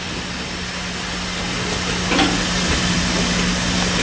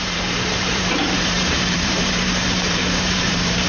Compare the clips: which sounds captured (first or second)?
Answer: first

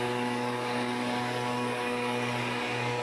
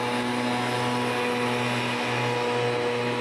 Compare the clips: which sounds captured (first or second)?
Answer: second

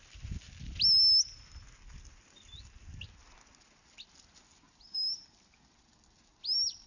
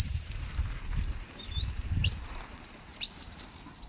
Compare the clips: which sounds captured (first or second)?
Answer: first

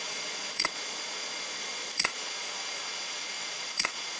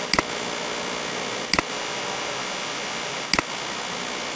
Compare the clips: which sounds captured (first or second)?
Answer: second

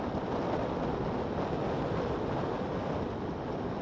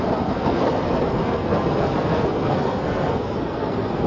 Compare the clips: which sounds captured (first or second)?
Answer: first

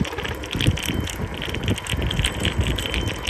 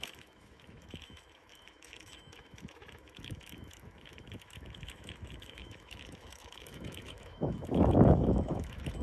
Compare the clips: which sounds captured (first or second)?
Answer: first